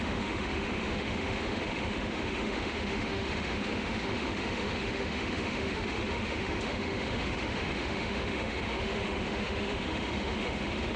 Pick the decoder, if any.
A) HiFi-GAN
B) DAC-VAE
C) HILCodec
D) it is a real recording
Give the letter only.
B